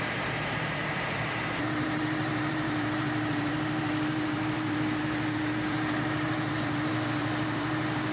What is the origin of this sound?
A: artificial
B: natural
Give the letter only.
A